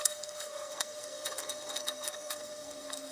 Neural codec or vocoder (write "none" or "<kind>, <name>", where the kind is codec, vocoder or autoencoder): codec, SNAC